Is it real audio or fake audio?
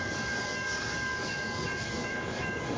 fake